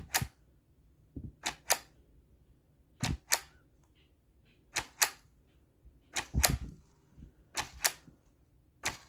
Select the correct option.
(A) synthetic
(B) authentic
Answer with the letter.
B